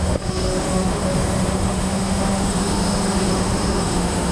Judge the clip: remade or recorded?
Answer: remade